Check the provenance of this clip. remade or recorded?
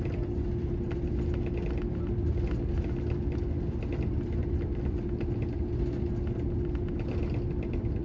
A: recorded